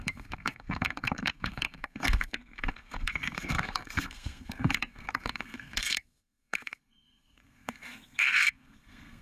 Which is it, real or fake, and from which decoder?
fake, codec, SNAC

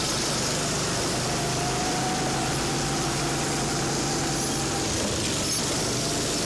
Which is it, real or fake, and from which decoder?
real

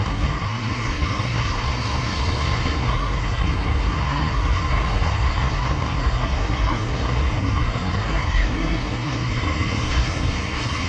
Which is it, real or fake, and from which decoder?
fake, codec, SNAC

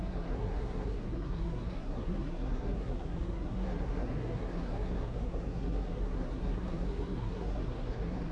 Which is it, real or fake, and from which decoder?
fake, codec, SNAC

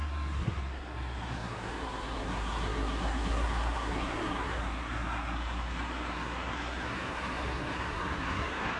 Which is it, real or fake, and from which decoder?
fake, codec, SNAC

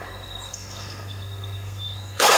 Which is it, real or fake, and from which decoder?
fake, codec, SNAC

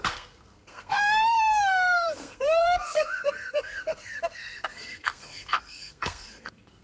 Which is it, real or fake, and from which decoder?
fake, codec, SNAC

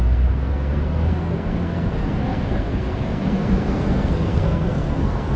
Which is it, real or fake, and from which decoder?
fake, codec, SNAC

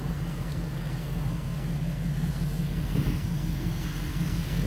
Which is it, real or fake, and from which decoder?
fake, codec, SNAC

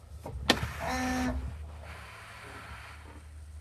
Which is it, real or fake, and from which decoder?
real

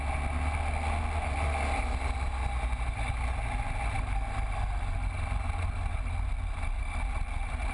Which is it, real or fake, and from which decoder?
real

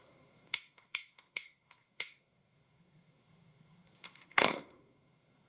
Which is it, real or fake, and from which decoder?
fake, codec, SNAC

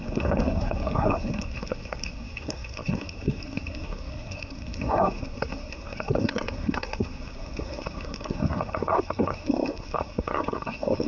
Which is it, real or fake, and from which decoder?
fake, codec, SNAC